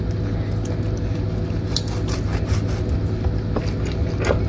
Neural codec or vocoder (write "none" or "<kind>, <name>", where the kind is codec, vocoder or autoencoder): none